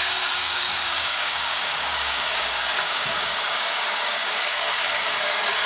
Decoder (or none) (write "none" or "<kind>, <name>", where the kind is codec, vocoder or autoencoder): codec, DAC